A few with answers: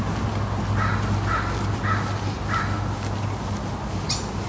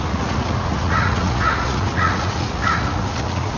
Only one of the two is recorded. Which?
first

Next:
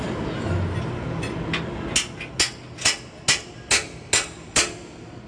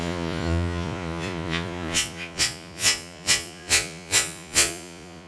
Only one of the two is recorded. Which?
first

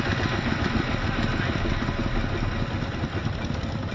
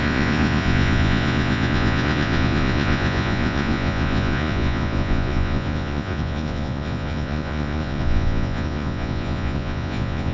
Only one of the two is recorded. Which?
first